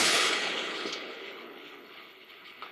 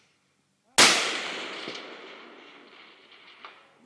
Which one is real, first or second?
second